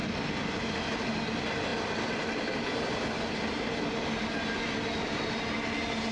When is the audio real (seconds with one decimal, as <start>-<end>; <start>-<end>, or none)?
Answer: 0.0-6.1